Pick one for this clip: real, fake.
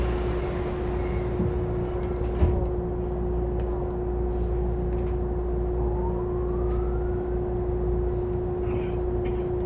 real